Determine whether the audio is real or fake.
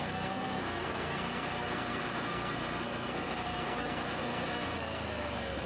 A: fake